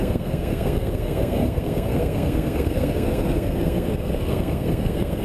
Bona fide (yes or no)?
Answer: no